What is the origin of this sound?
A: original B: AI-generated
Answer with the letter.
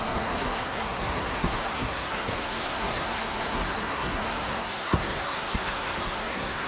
B